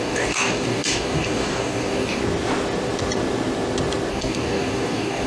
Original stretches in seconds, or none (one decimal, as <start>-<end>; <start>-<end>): 2.2-4.1